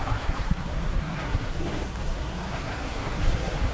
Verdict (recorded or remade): remade